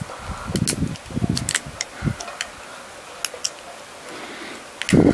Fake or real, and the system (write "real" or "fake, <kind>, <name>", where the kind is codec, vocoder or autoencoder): real